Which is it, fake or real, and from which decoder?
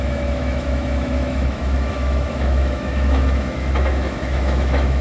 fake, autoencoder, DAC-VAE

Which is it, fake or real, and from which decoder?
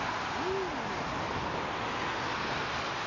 real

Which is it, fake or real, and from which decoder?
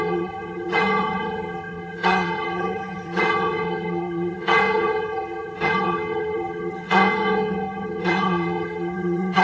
fake, vocoder, HiFi-GAN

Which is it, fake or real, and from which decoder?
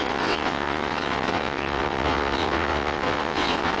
fake, vocoder, WaveNeXt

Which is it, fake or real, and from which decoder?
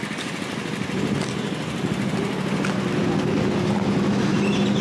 real